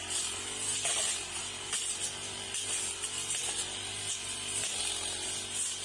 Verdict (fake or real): real